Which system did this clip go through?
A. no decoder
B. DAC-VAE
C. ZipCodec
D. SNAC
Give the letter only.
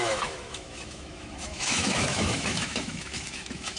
B